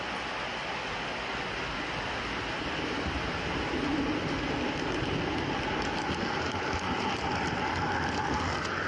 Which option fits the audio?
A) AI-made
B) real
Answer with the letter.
B